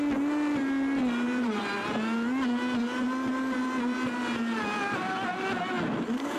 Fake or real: real